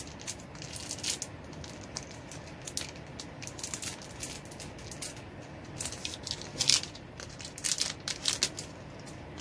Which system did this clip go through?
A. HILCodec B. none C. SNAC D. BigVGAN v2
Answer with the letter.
B